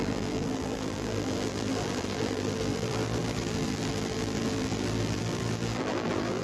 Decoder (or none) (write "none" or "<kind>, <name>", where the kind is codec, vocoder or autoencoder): vocoder, BigVGAN v2